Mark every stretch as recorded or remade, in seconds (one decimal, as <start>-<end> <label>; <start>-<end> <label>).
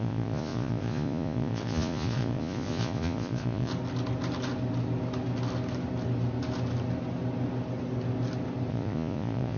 0.0-3.7 remade; 3.7-8.7 recorded; 8.7-9.6 remade